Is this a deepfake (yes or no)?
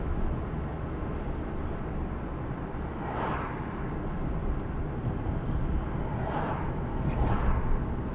no